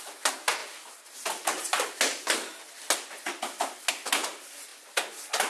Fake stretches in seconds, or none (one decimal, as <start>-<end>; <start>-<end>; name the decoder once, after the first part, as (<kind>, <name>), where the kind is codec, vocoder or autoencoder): none